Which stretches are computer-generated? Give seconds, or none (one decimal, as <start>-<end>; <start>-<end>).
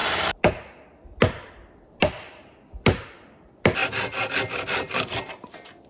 none